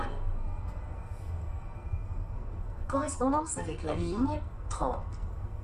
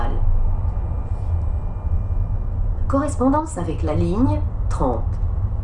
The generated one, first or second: first